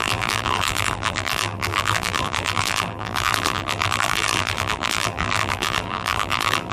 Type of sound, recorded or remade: remade